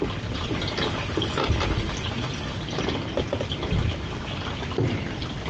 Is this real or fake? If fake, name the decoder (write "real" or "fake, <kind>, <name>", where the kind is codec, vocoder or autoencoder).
real